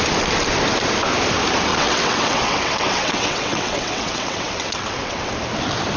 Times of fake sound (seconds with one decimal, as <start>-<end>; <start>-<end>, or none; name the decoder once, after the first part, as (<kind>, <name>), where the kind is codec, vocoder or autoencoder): 1.7-5.3 (vocoder, WaveNeXt)

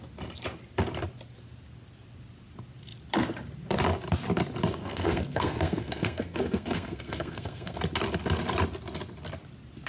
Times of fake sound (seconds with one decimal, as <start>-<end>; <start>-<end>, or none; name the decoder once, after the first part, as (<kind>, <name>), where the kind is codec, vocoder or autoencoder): 4.7-7.8 (codec, SNAC)

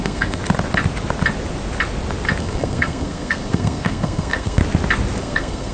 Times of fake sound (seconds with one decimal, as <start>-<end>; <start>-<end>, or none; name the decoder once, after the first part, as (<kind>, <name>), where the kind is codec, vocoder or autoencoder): 0.0-0.4 (codec, SNAC); 2.4-4.6; 5.2-5.7

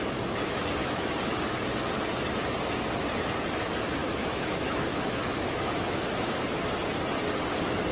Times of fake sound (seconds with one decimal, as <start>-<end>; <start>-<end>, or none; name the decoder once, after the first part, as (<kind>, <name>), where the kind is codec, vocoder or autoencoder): 0.8-1.4 (autoencoder, DAC-VAE); 4.0-6.3

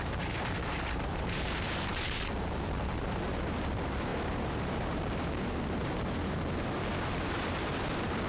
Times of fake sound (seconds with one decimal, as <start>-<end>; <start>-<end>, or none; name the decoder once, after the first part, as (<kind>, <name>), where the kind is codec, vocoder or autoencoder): 0.0-8.3 (vocoder, BigVGAN v2)

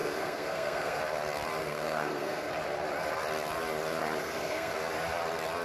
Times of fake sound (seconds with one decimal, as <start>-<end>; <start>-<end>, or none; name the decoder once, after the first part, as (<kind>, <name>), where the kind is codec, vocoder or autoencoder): 0.0-1.0 (codec, SNAC); 1.6-2.5; 4.2-4.7

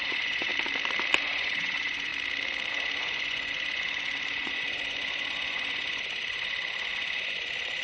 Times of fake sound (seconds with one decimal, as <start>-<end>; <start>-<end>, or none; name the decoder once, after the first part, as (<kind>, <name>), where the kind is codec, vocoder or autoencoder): 0.0-0.5 (vocoder, Vocos); 1.2-2.1; 2.7-7.8